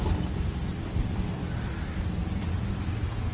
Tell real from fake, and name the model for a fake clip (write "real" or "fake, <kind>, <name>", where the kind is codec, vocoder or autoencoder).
real